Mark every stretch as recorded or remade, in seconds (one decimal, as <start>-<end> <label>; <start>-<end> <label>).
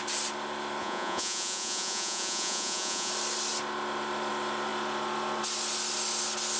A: 0.0-0.8 recorded; 0.8-3.1 remade; 3.1-6.6 recorded